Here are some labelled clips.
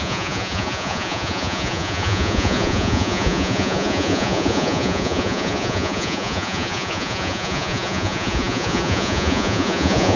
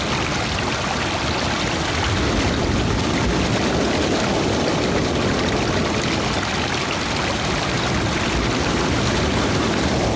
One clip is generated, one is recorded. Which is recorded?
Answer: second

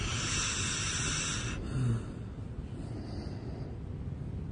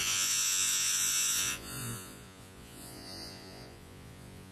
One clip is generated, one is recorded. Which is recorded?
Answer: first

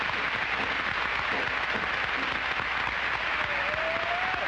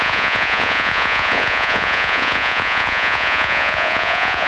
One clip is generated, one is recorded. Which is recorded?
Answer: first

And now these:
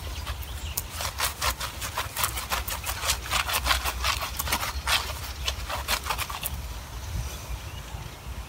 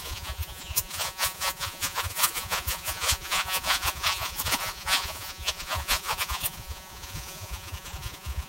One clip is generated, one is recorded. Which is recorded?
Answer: first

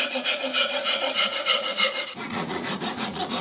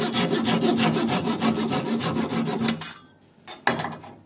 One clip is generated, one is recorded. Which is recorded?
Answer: second